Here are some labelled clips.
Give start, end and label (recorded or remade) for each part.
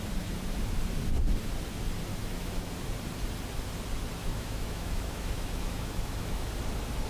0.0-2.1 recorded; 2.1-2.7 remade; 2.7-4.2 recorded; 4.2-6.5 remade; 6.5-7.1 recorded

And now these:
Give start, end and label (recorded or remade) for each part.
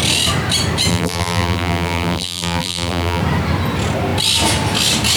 0.0-0.9 recorded; 0.9-3.2 remade; 3.2-5.2 recorded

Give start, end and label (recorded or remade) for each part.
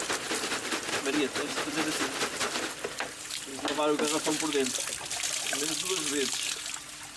0.0-7.2 recorded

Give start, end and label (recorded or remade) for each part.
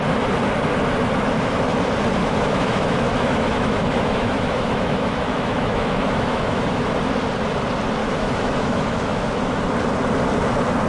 0.0-2.2 recorded; 2.2-6.9 remade; 6.9-8.0 recorded; 8.0-9.6 remade; 9.6-10.9 recorded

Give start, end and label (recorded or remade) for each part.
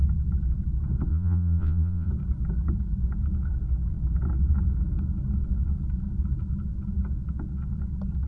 0.0-1.1 recorded; 1.1-2.1 remade; 2.1-8.3 recorded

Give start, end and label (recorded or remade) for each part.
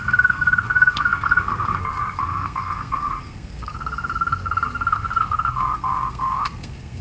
0.0-7.0 remade